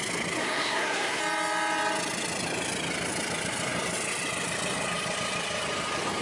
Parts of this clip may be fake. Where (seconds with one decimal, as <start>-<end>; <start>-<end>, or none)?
0.4-1.2